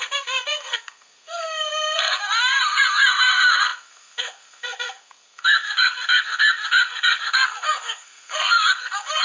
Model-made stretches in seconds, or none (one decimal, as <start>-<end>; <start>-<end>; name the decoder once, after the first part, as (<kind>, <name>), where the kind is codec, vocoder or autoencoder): 0.0-9.2 (codec, SNAC)